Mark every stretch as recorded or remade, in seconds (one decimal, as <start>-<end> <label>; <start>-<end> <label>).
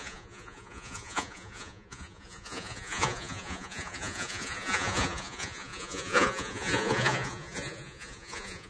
0.0-8.7 remade